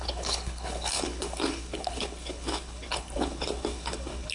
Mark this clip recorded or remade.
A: remade